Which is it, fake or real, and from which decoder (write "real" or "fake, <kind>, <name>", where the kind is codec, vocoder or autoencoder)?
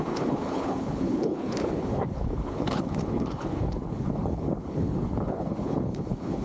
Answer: fake, codec, HILCodec